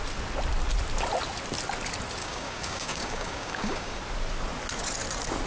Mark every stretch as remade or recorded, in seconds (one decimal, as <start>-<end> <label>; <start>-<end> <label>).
0.0-2.2 recorded; 2.2-4.0 remade; 4.0-5.5 recorded